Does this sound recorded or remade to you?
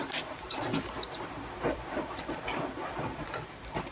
remade